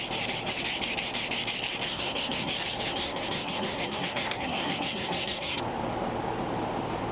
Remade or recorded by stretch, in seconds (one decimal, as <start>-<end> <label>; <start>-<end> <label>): 0.0-1.9 recorded; 1.9-2.5 remade; 2.5-2.9 recorded; 2.9-5.6 remade; 5.6-7.1 recorded